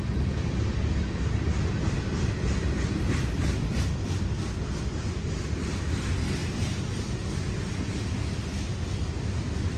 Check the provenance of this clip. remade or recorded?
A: recorded